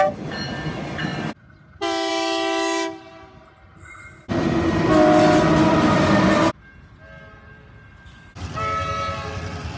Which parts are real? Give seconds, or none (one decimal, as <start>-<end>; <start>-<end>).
0.0-9.8